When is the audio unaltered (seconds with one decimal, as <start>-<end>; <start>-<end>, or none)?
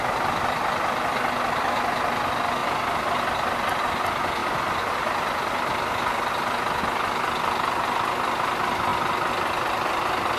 0.0-10.4